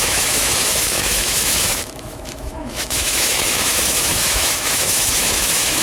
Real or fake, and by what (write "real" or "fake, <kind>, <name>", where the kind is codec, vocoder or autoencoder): fake, autoencoder, DAC-VAE